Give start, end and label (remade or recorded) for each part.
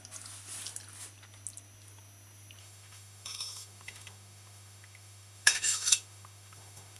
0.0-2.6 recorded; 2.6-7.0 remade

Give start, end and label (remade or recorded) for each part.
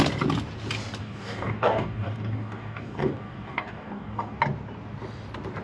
0.0-1.0 recorded; 1.0-4.4 remade; 4.4-5.6 recorded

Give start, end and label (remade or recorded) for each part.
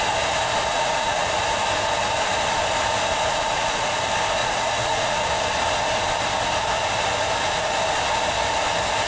0.0-0.7 recorded; 0.7-1.3 remade; 1.3-3.3 recorded; 3.3-3.9 remade; 3.9-4.4 recorded; 4.4-5.2 remade; 5.2-9.1 recorded